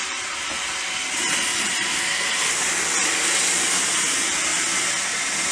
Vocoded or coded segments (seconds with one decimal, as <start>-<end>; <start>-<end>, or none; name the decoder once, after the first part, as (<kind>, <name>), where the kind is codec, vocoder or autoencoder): 1.5-2.0 (vocoder, BigVGAN v2); 4.5-5.5